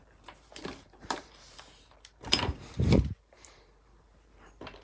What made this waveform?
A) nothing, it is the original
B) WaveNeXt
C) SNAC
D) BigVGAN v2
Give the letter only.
D